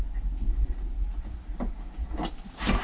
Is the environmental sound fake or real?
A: real